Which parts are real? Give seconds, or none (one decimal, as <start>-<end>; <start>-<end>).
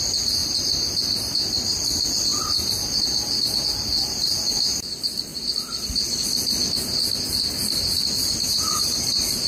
0.0-9.5